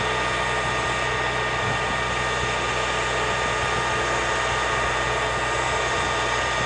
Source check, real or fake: real